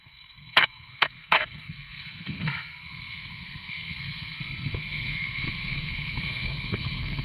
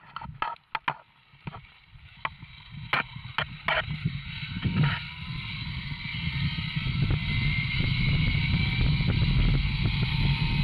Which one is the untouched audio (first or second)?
second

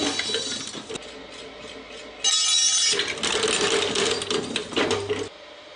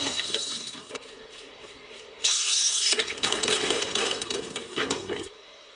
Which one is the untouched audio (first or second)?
first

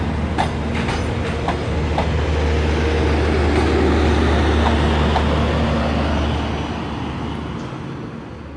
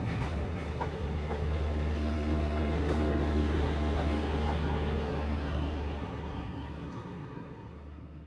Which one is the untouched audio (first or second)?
first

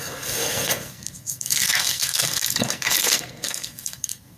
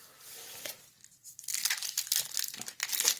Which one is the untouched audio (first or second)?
second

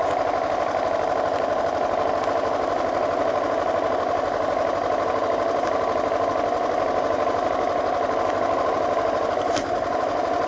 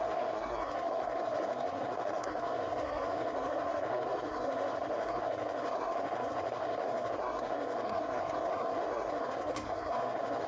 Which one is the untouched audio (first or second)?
first